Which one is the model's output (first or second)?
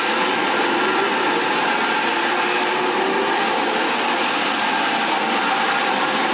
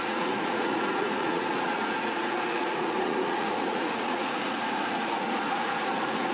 second